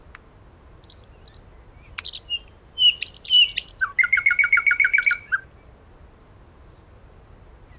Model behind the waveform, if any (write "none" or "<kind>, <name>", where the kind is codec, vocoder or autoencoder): none